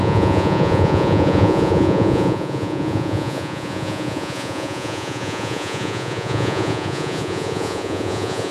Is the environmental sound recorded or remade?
remade